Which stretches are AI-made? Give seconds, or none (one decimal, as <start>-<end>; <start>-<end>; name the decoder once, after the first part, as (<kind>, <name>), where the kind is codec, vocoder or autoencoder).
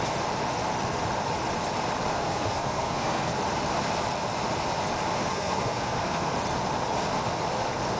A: 2.1-3.3 (codec, SNAC); 5.3-6.3